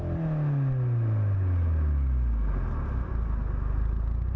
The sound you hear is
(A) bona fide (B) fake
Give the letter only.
A